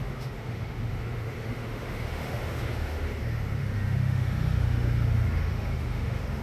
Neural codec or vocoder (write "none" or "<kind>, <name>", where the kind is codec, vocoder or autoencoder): autoencoder, DAC-VAE